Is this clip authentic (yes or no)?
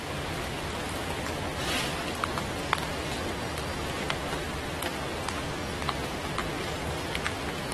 yes